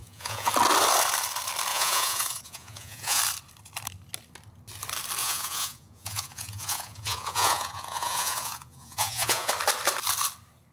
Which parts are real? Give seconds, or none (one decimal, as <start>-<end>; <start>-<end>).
0.5-1.7; 3.2-5.2; 9.5-10.7